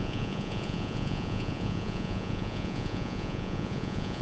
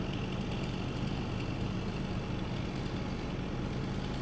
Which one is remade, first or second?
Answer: first